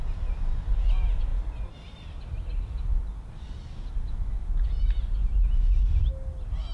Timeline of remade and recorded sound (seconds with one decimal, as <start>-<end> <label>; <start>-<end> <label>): 0.0-4.4 recorded; 4.4-5.0 remade; 5.0-6.7 recorded